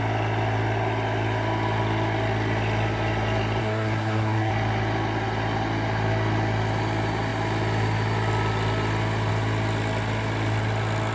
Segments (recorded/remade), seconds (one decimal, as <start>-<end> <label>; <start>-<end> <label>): 0.0-3.6 recorded; 3.6-4.5 remade; 4.5-11.1 recorded